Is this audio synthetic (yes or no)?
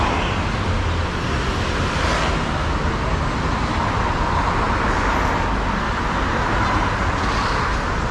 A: no